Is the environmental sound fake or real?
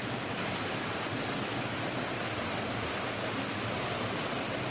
real